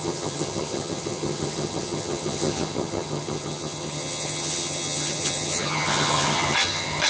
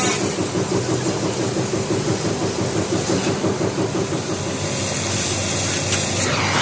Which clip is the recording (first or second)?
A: second